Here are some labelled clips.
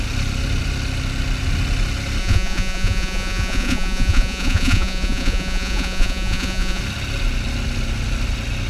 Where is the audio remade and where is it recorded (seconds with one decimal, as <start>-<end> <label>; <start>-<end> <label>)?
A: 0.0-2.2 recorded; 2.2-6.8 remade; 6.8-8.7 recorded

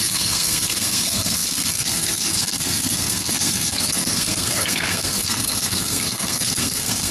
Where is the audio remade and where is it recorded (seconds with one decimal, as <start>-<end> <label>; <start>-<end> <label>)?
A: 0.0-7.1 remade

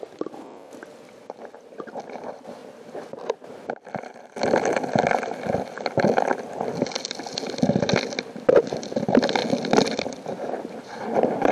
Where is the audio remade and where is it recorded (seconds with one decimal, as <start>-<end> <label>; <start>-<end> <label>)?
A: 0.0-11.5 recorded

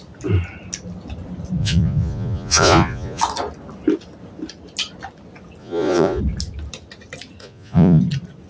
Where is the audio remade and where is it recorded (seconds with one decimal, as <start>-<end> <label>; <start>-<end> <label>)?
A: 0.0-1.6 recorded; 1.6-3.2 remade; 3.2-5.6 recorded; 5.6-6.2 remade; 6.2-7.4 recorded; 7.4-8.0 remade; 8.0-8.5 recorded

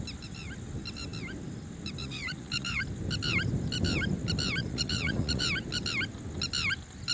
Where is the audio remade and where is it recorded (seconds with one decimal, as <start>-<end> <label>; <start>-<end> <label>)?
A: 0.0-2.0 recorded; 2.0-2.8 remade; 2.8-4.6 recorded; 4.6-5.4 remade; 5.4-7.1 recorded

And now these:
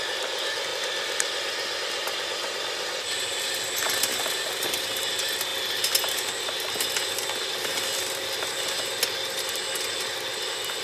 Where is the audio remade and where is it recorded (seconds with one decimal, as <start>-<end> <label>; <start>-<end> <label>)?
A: 0.0-0.7 recorded; 0.7-3.5 remade; 3.5-10.8 recorded

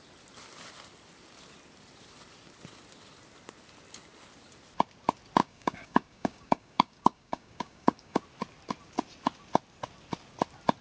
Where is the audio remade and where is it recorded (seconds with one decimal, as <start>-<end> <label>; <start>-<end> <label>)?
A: 0.0-5.4 recorded; 5.4-8.2 remade; 8.2-10.8 recorded